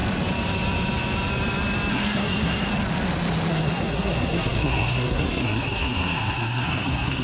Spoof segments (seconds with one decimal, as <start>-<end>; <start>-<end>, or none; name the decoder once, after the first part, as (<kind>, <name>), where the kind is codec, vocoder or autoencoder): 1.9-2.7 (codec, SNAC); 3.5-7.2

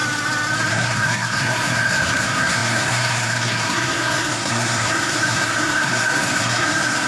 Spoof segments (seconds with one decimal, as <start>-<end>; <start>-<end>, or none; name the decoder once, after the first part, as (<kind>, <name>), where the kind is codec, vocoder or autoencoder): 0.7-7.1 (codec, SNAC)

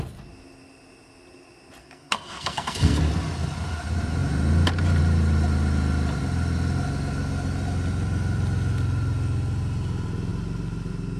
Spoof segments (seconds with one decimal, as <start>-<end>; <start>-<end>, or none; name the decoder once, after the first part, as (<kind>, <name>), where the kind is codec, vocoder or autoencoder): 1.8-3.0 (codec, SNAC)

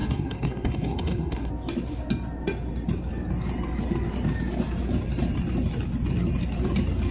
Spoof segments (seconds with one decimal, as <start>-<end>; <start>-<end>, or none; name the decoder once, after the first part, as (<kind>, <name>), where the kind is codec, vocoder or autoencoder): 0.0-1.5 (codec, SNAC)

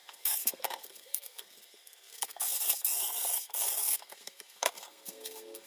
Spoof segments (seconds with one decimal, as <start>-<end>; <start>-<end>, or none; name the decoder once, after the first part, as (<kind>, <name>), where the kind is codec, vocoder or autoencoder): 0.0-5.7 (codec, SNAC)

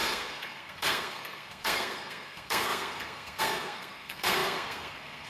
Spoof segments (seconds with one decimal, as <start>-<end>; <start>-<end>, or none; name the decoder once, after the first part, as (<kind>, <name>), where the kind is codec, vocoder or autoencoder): 0.0-5.3 (codec, SNAC)

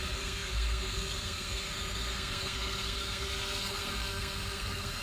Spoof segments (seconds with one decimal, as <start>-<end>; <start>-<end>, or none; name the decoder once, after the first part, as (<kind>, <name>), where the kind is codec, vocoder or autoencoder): 0.0-5.0 (codec, SNAC)